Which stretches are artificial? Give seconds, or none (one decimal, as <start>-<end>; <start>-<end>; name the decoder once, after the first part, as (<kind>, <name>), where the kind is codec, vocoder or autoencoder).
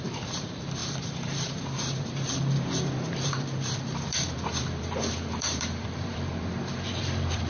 0.0-7.5 (vocoder, BigVGAN v2)